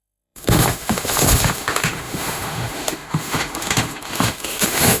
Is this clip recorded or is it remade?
remade